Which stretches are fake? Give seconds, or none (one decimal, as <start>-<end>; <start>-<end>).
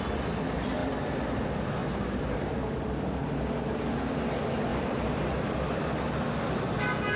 1.8-2.6; 4.7-5.3